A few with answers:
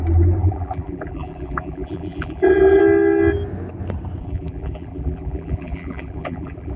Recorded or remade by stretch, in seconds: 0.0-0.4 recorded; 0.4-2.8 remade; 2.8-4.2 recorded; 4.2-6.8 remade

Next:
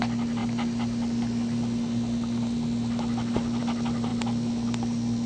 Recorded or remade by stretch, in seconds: 0.0-5.3 recorded

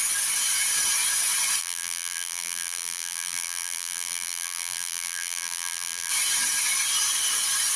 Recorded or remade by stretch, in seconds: 0.0-1.6 recorded; 1.6-6.1 remade; 6.1-7.8 recorded

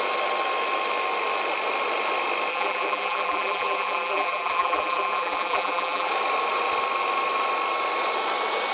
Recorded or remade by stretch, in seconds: 0.0-2.5 recorded; 2.5-6.1 remade; 6.1-8.7 recorded

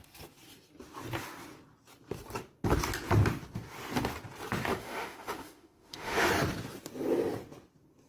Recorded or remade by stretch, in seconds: 0.0-4.7 recorded; 4.7-6.3 remade; 6.3-8.1 recorded

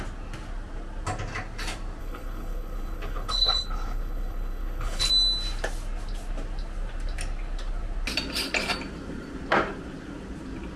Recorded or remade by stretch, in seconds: 0.0-2.0 recorded; 2.0-5.1 remade; 5.1-10.8 recorded

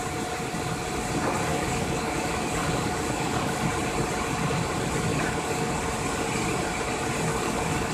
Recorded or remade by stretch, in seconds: 0.0-1.5 recorded; 1.5-3.6 remade; 3.6-5.1 recorded; 5.1-5.7 remade; 5.7-7.3 recorded; 7.3-7.9 remade